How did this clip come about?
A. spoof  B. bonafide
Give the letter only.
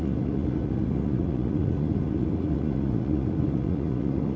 A